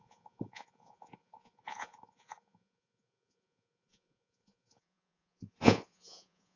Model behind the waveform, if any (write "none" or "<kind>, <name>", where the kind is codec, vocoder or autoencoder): vocoder, Vocos